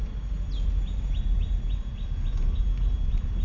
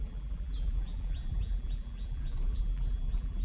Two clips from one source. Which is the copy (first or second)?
second